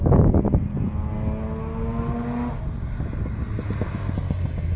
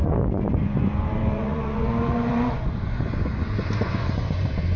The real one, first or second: first